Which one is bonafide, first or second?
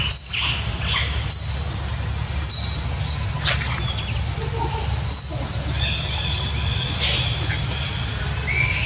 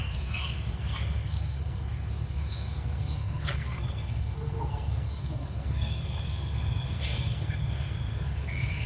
first